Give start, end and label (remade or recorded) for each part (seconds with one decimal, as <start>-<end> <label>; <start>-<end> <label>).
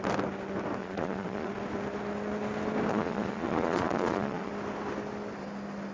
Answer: 0.0-0.8 recorded; 0.8-1.5 remade; 1.5-2.9 recorded; 2.9-4.5 remade; 4.5-5.9 recorded